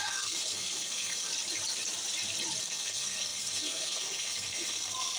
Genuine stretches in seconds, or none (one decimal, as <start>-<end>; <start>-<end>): 1.3-2.6